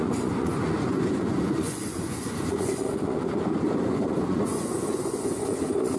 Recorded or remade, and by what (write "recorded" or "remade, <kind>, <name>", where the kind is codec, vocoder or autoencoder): remade, vocoder, Vocos